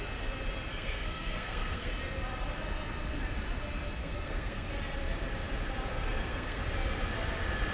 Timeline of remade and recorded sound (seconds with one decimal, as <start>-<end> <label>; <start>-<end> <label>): 0.0-0.7 recorded; 0.7-1.9 remade; 1.9-4.0 recorded; 4.0-4.7 remade; 4.7-5.9 recorded; 5.9-6.6 remade; 6.6-7.7 recorded